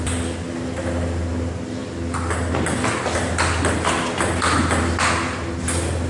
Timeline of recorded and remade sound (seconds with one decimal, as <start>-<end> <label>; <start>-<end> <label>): 0.0-6.1 recorded